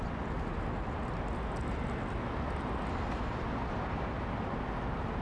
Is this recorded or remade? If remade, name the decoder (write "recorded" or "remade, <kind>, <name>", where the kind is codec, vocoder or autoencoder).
recorded